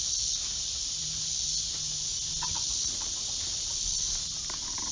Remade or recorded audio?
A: remade